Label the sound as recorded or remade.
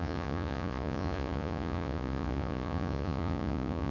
remade